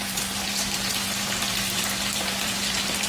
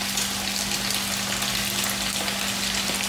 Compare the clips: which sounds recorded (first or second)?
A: second